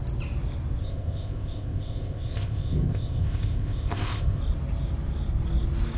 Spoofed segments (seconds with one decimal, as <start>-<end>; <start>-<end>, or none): 0.8-4.4